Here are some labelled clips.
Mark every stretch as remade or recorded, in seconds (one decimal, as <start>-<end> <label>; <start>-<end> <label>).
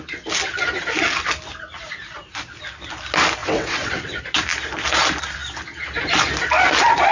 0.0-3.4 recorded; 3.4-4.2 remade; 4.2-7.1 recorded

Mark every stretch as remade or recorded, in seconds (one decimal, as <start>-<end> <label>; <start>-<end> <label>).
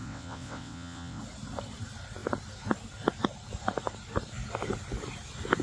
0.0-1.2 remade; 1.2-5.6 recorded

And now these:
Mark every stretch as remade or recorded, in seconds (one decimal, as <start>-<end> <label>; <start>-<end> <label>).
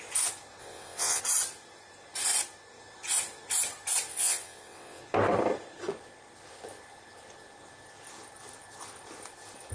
0.0-0.6 recorded; 0.6-1.2 remade; 1.2-4.1 recorded; 4.1-5.0 remade; 5.0-9.7 recorded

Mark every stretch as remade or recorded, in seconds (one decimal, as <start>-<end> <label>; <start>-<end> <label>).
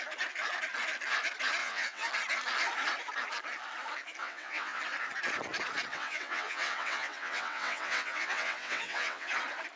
0.0-1.6 recorded; 1.6-2.1 remade; 2.1-4.2 recorded; 4.2-4.8 remade; 4.8-5.9 recorded; 5.9-9.3 remade; 9.3-9.8 recorded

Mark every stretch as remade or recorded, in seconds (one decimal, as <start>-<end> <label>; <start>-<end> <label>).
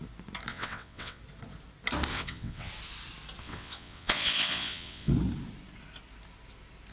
0.0-0.5 recorded; 0.5-1.2 remade; 1.2-2.1 recorded; 2.1-2.7 remade; 2.7-3.4 recorded; 3.4-5.1 remade; 5.1-6.9 recorded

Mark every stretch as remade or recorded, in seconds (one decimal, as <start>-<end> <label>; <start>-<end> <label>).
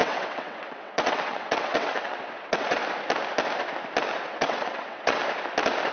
0.0-2.8 remade; 2.8-4.3 recorded; 4.3-5.2 remade; 5.2-5.9 recorded